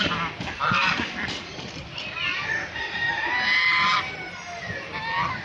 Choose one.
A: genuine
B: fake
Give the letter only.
A